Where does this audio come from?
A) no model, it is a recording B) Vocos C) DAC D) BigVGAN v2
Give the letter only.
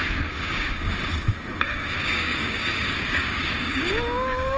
C